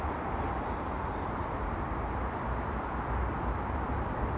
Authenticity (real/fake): fake